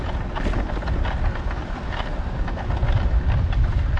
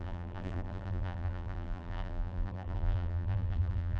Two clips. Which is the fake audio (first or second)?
second